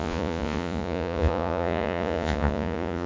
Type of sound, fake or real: fake